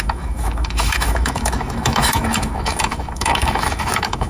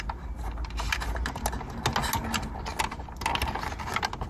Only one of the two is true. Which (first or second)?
second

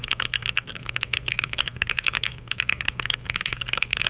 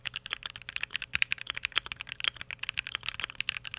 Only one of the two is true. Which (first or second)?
second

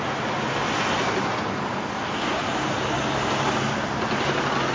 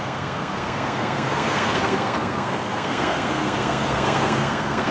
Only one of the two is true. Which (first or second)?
first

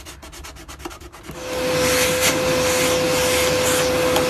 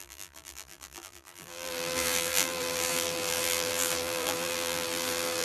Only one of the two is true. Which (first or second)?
first